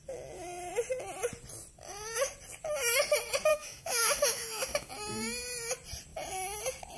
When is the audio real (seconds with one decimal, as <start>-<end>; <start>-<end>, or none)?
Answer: 0.0-3.5; 4.9-7.0